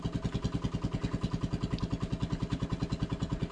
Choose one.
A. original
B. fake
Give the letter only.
A